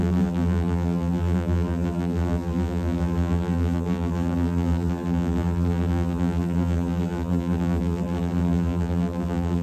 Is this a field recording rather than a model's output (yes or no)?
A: no